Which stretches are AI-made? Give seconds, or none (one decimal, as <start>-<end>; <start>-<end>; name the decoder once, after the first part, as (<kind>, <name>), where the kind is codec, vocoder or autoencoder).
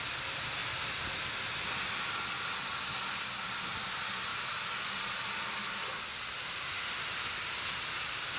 none